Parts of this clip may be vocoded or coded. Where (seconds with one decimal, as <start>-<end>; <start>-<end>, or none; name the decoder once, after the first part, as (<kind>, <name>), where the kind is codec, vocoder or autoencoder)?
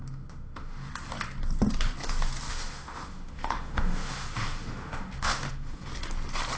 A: 0.0-0.9 (autoencoder, DAC-VAE); 2.5-5.9